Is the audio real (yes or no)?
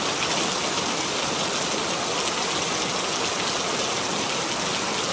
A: yes